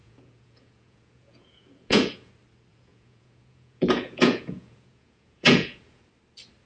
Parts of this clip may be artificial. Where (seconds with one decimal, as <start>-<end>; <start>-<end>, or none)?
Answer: 0.0-2.3; 2.7-6.0